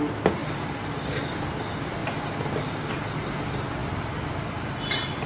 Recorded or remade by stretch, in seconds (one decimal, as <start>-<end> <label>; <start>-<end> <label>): 0.0-5.3 recorded